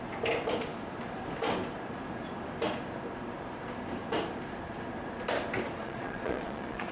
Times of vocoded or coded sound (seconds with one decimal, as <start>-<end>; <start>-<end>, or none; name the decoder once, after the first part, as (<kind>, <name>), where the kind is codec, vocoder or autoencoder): 5.8-6.9 (vocoder, Vocos)